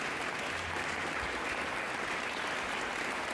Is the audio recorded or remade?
recorded